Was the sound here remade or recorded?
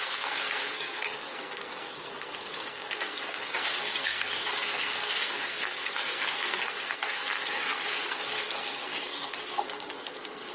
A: remade